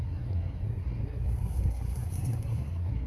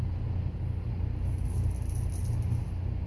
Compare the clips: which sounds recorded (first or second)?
second